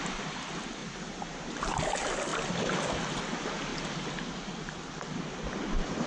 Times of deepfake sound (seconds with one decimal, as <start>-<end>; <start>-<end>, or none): 0.8-1.9